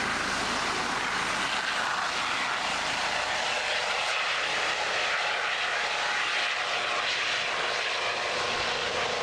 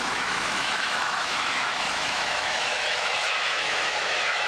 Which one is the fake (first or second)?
second